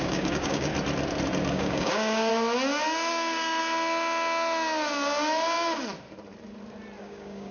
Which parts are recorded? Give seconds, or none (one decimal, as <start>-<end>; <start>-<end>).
0.7-1.5; 2.3-3.1; 3.6-7.0